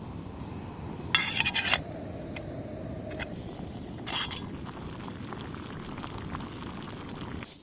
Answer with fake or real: real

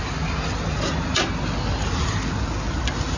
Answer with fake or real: real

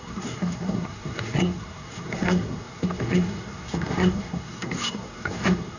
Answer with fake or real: fake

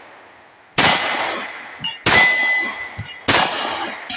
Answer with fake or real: real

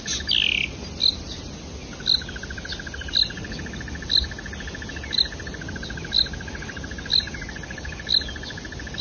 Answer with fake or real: real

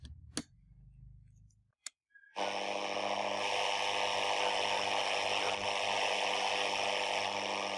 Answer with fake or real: real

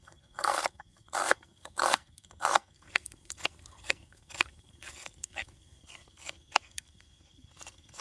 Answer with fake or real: fake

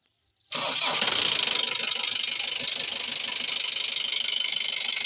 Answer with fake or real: real